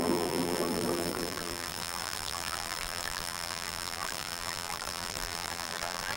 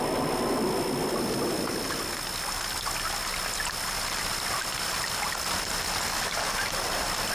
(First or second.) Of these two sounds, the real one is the second